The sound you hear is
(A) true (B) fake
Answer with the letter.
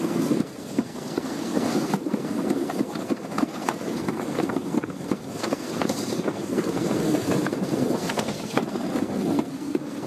B